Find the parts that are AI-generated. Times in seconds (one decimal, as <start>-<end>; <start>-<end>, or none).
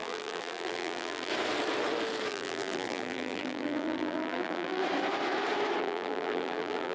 0.0-1.3; 2.3-4.8; 5.8-6.9